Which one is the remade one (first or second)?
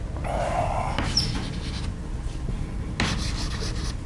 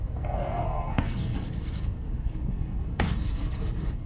second